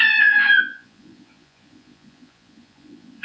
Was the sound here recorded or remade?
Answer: remade